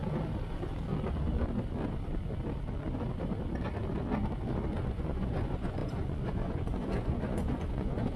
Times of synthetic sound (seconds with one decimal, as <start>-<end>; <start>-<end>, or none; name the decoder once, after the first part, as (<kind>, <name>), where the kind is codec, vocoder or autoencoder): 4.8-8.2 (vocoder, Vocos)